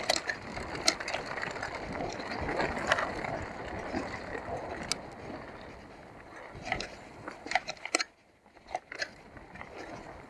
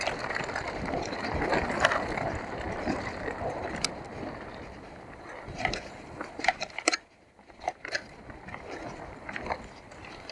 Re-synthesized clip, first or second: second